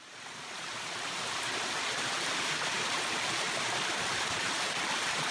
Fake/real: real